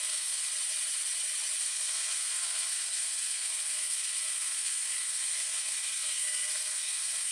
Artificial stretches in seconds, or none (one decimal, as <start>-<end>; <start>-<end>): 0.0-0.4; 1.6-7.3